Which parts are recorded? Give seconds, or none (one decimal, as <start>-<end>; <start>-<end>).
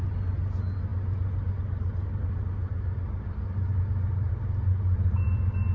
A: 0.0-5.7